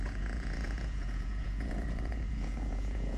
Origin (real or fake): fake